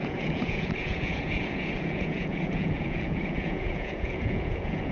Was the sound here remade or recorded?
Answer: remade